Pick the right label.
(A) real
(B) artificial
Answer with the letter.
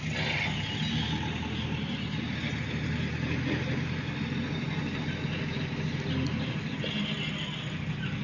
A